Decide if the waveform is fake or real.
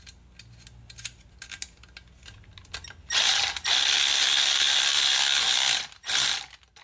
real